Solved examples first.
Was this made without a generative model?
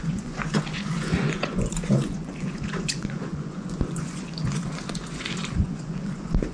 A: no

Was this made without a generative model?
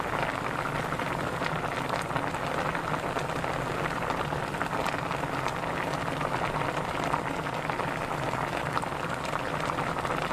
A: yes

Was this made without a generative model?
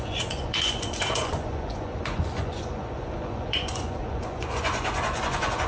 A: no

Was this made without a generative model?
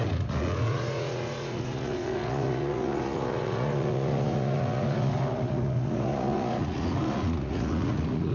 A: no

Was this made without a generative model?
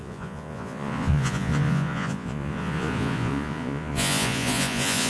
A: no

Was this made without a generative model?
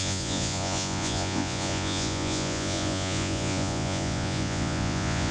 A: no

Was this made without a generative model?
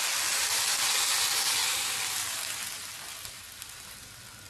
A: yes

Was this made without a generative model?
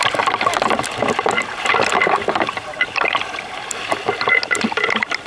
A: yes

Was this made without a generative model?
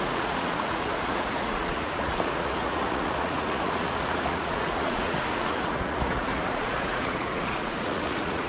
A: no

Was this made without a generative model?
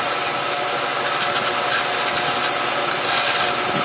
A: yes